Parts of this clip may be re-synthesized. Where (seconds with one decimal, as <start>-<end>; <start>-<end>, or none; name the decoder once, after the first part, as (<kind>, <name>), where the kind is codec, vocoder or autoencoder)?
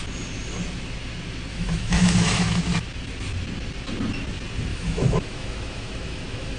1.5-2.6 (autoencoder, DAC-VAE); 4.7-6.6